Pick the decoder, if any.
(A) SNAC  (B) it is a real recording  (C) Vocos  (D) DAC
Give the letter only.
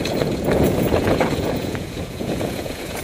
C